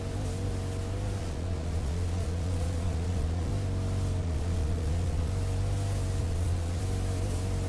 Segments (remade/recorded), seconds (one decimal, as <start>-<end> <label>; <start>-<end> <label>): 0.0-1.2 recorded; 1.2-3.5 remade; 3.5-4.2 recorded; 4.2-5.3 remade; 5.3-6.2 recorded; 6.2-6.8 remade; 6.8-7.7 recorded